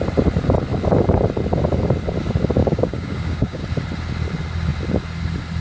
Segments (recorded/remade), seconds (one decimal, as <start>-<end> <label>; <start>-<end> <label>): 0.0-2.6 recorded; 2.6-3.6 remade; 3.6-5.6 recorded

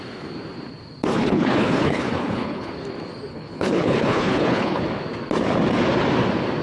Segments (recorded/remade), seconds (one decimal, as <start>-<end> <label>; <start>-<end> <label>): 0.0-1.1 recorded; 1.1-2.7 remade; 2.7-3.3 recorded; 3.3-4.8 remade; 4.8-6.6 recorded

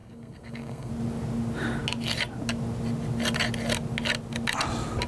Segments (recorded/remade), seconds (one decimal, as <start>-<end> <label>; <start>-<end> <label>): 0.0-0.9 remade; 0.9-5.1 recorded

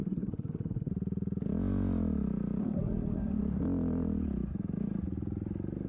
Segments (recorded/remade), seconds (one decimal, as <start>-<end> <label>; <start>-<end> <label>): 0.0-0.9 remade; 0.9-2.6 recorded; 2.6-3.4 remade; 3.4-5.9 recorded

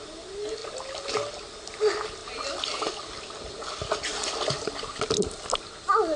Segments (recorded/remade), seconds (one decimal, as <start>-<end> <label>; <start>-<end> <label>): 0.0-6.2 recorded